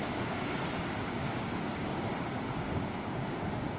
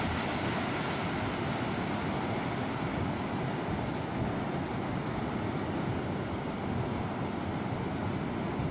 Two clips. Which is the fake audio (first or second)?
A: first